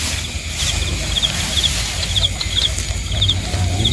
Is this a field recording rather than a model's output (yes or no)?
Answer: yes